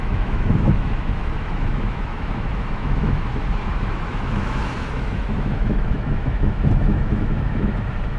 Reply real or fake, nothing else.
fake